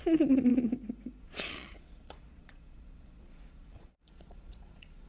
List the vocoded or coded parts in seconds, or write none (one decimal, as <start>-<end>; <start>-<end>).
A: 0.0-0.5; 1.2-5.1